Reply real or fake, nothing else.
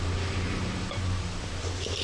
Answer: real